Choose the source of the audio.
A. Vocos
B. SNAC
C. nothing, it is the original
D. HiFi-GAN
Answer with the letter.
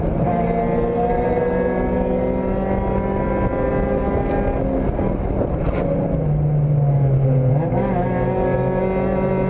C